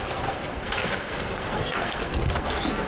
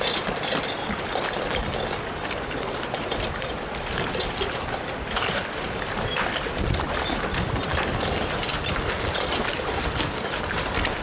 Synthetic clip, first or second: first